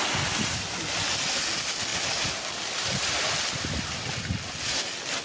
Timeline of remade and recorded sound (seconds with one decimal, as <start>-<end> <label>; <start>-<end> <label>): 0.0-5.2 recorded